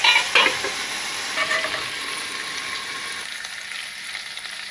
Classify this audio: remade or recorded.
recorded